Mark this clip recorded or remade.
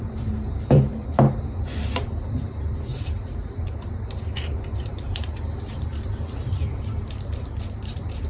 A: remade